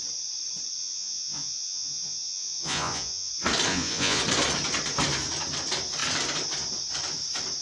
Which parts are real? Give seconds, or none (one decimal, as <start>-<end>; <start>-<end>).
0.0-0.8; 3.3-3.7; 4.2-7.6